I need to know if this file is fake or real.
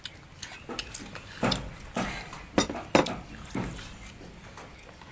real